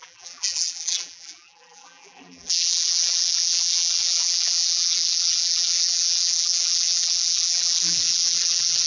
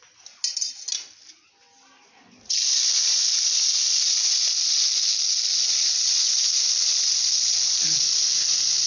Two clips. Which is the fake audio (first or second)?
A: first